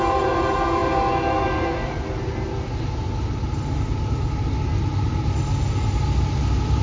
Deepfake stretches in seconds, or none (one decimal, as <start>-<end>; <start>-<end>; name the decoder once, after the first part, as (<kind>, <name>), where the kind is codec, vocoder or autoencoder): none